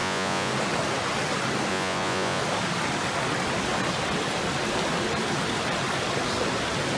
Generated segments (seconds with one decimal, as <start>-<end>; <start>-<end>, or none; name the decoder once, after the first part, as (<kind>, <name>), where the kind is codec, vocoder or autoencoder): 0.0-0.5 (vocoder, Vocos); 1.7-2.4